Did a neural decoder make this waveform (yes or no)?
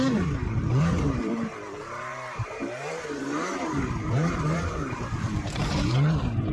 yes